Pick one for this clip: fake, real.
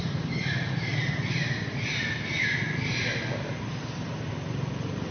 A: real